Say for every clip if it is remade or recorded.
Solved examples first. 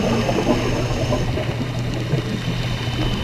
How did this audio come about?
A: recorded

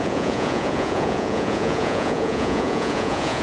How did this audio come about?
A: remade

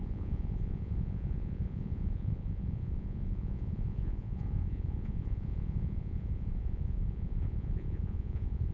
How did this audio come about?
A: remade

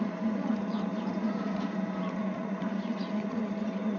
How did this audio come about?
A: remade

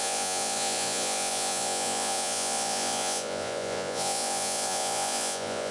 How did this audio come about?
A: remade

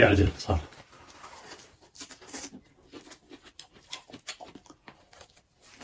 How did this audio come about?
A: recorded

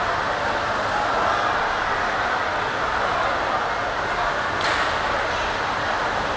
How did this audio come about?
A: recorded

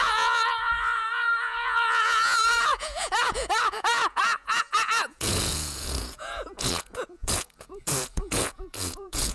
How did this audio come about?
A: remade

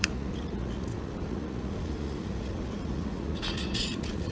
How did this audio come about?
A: remade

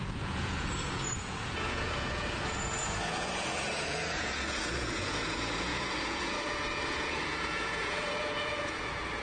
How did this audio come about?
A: remade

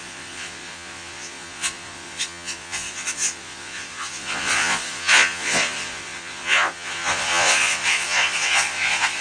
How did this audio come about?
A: remade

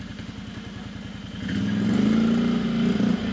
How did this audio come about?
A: recorded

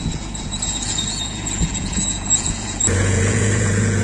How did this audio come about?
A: remade